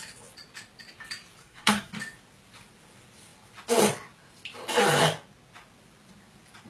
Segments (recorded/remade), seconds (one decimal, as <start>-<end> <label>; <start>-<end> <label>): 0.0-1.4 recorded; 1.4-1.9 remade; 1.9-6.7 recorded